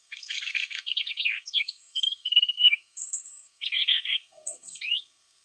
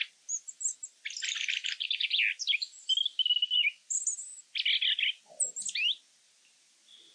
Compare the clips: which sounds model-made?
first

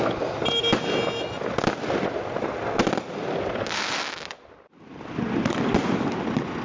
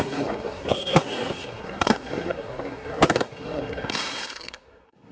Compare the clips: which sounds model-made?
second